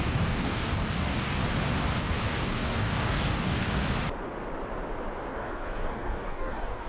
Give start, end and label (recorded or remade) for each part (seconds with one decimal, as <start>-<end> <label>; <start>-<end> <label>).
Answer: 0.0-1.4 remade; 1.4-2.0 recorded; 2.0-3.8 remade; 3.8-5.3 recorded; 5.3-6.9 remade